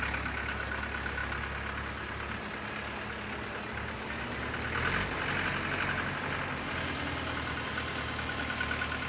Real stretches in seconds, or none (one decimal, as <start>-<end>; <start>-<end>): 0.0-9.1